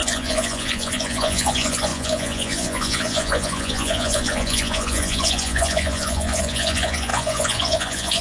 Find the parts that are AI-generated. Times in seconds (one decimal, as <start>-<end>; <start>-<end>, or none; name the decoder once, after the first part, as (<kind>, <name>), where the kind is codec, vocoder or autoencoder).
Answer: 0.0-8.2 (vocoder, Vocos)